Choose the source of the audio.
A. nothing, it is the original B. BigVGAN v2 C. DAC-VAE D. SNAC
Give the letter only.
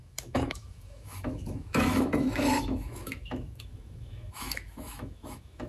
C